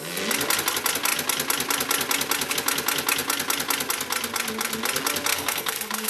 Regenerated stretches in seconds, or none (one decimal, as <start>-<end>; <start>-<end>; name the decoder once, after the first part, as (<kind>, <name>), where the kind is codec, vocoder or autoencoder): 5.3-6.1 (codec, SNAC)